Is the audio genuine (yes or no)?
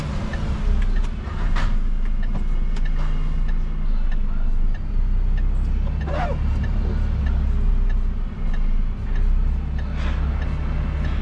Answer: yes